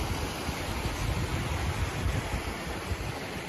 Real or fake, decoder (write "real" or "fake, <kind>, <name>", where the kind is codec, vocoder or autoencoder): real